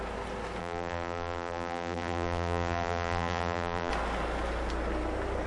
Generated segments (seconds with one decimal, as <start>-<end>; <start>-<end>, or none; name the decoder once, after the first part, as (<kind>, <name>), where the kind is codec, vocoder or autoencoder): 0.6-3.9 (vocoder, BigVGAN v2)